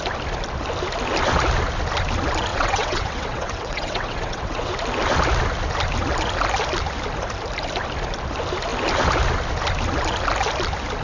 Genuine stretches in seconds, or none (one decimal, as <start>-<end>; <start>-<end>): 0.0-2.5; 4.7-11.0